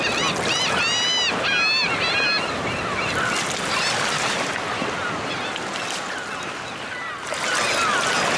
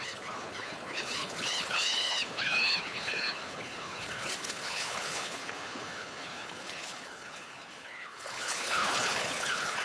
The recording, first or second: first